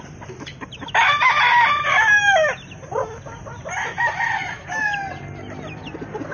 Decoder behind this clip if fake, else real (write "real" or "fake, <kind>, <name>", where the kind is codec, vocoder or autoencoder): real